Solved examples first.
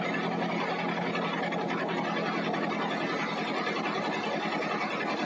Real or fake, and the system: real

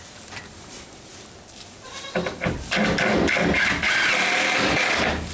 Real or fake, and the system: real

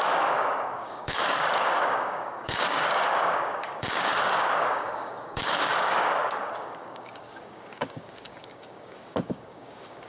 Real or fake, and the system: fake, codec, DAC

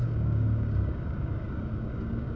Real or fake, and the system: fake, codec, DAC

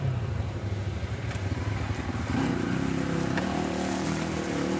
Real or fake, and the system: real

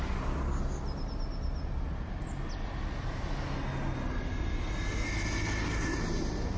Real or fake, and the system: real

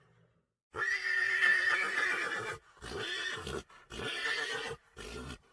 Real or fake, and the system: real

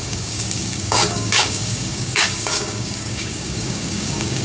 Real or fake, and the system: fake, codec, DAC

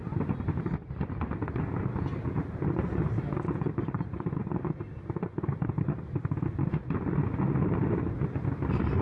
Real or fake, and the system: real